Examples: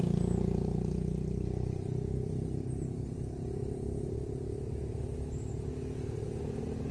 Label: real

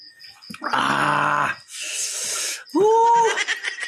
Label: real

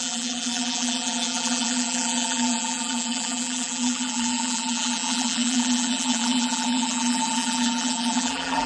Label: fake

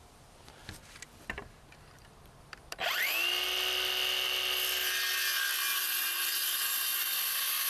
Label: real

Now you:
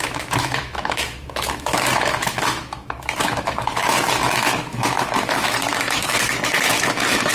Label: fake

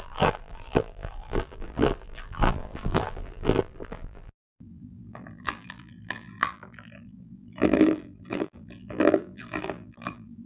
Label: fake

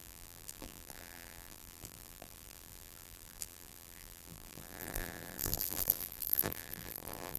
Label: fake